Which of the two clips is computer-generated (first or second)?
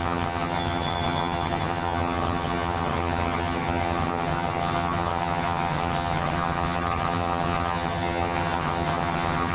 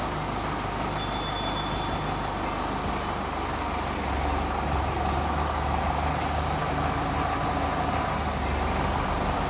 first